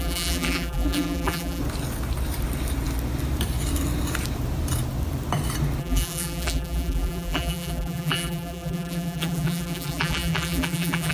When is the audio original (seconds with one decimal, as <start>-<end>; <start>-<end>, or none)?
1.6-5.8

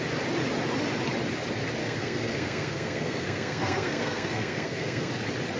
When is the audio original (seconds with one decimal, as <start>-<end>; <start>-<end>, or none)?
0.0-1.8; 5.1-5.6

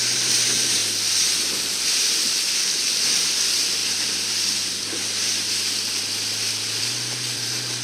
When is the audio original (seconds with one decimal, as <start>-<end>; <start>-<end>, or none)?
0.8-2.3

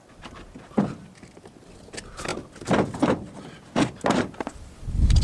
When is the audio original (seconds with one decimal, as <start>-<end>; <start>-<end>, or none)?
0.0-5.2